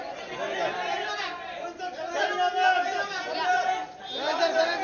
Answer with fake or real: real